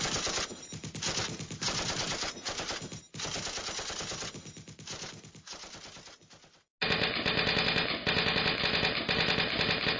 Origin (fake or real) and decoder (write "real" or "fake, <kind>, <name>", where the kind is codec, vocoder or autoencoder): real